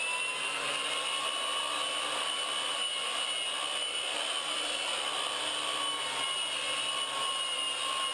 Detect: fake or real real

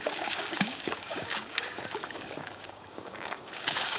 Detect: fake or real fake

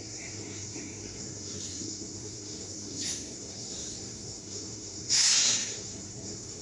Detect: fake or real fake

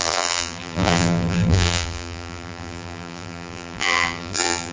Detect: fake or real fake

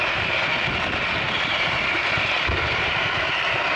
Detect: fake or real fake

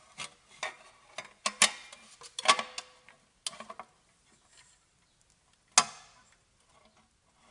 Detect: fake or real real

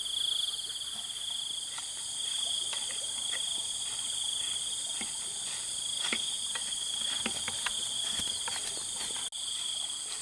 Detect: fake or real real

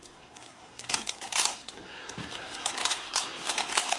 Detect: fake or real fake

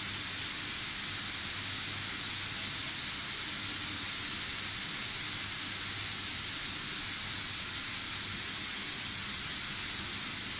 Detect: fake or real real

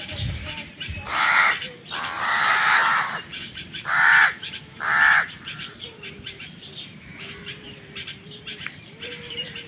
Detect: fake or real fake